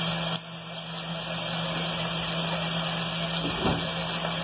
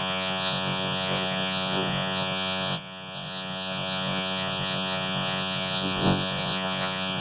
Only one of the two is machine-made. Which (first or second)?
second